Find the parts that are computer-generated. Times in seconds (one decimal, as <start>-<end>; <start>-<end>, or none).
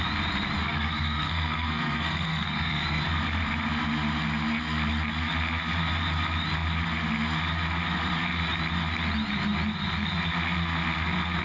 0.6-3.0